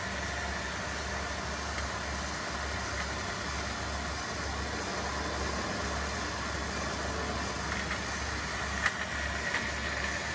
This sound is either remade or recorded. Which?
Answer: recorded